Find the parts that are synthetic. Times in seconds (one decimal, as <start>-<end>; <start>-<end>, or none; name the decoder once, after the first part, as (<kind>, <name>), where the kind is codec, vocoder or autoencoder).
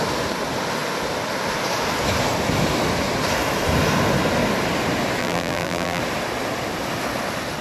5.2-6.0 (vocoder, BigVGAN v2)